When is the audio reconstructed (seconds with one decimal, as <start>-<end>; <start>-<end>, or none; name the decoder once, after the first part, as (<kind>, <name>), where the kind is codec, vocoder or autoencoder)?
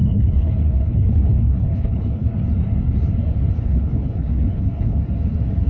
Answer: 0.0-2.3 (codec, HILCodec); 3.5-5.0